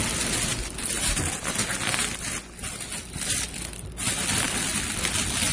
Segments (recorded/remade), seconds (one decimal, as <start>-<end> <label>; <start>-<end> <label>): 0.0-5.5 recorded